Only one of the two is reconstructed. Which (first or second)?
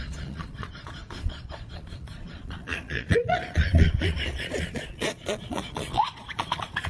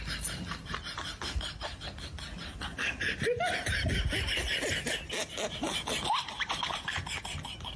first